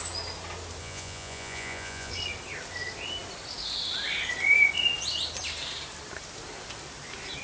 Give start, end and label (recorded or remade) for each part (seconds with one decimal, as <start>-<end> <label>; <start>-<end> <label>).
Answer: 0.0-0.8 recorded; 0.8-2.1 remade; 2.1-7.4 recorded